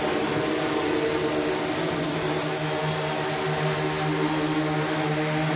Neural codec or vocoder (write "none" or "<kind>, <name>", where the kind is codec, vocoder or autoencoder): none